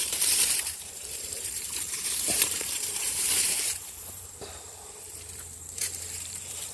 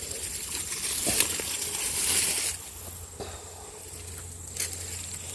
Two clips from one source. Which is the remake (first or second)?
first